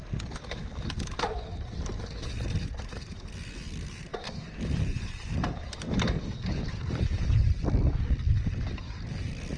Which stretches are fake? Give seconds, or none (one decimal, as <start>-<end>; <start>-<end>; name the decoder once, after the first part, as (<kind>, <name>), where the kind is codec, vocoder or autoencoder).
4.1-7.6 (vocoder, BigVGAN v2)